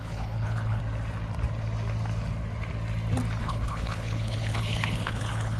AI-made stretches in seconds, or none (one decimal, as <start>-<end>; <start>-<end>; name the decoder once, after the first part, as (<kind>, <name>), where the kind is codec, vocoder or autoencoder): 0.0-0.8 (codec, HILCodec); 3.4-5.6